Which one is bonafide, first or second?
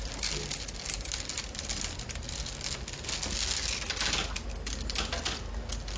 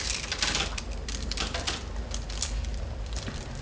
first